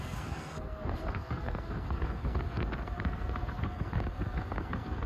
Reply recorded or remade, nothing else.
remade